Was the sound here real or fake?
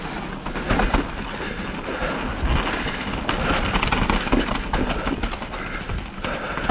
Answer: real